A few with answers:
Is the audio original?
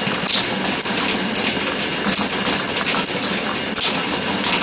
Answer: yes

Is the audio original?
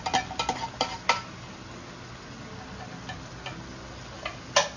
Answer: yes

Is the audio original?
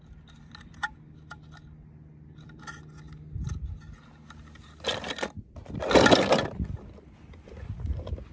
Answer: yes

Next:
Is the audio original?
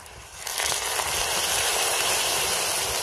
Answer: yes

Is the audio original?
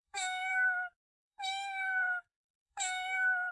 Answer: no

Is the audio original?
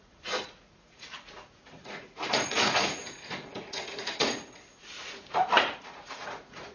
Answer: no